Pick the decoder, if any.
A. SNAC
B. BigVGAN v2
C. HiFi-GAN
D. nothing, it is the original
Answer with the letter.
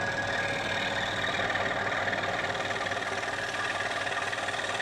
D